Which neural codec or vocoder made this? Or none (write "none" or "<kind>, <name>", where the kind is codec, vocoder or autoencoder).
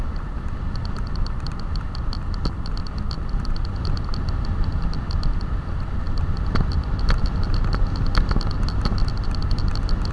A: none